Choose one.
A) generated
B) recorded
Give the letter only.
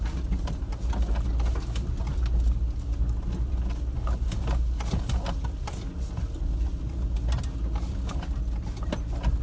B